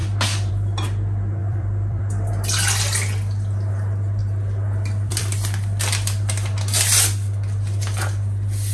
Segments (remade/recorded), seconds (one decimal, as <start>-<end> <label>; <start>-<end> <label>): 0.0-1.4 recorded; 1.4-2.3 remade; 2.3-4.2 recorded; 4.2-5.2 remade; 5.2-8.7 recorded